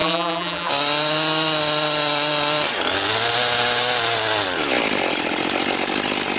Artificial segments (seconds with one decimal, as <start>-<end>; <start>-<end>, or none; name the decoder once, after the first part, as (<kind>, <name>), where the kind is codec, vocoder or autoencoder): 0.0-0.7 (vocoder, BigVGAN v2)

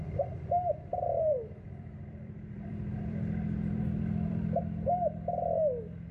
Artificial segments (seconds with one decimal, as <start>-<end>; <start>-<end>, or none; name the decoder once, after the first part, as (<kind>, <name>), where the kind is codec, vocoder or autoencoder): 0.9-4.6 (vocoder, BigVGAN v2)

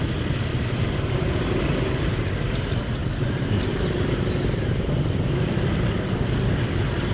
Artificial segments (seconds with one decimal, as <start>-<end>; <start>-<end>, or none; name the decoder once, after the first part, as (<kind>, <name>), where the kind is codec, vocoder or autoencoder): 0.5-2.3 (vocoder, BigVGAN v2); 3.0-4.9

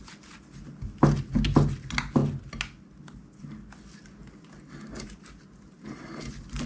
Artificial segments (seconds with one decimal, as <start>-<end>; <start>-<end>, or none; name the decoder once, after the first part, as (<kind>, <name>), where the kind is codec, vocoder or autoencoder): none

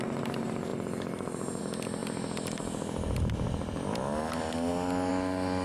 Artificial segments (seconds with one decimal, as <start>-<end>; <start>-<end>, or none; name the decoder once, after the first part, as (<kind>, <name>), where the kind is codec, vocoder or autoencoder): none

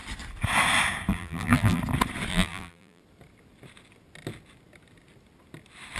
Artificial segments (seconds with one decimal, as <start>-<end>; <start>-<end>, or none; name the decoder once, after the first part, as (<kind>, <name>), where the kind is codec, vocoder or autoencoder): 1.1-1.8 (vocoder, BigVGAN v2); 2.3-3.0